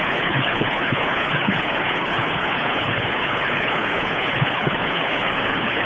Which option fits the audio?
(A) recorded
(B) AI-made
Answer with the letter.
B